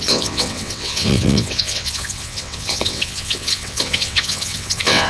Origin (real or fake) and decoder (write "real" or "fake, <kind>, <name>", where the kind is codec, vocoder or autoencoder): fake, vocoder, WaveNeXt